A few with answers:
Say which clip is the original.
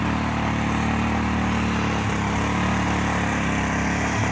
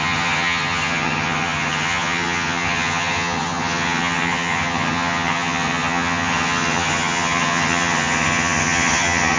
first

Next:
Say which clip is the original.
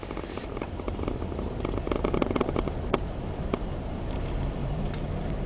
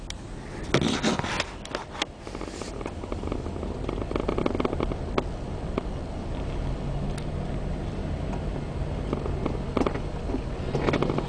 second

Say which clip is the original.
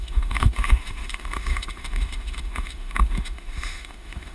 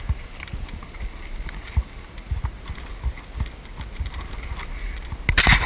second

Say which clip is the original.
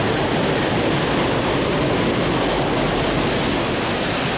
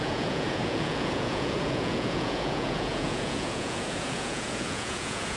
first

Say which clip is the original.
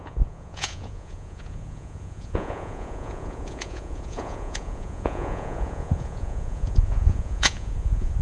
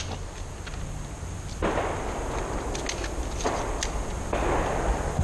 second